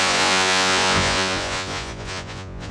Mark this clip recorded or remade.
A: remade